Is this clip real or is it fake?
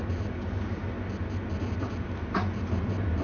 real